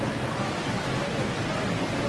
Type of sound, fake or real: real